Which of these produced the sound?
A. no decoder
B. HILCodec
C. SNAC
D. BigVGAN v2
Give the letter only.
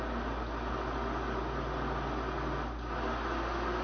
A